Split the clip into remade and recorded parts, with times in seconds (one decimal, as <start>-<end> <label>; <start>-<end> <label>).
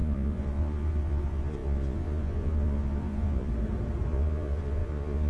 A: 0.0-3.5 remade; 3.5-4.1 recorded; 4.1-5.3 remade